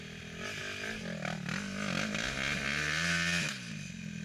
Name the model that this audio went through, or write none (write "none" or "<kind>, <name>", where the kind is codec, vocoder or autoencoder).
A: none